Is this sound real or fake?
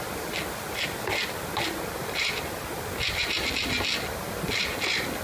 real